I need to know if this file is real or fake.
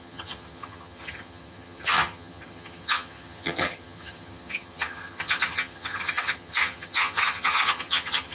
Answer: fake